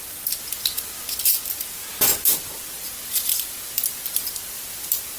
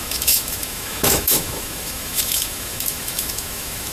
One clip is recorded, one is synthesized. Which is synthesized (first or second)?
second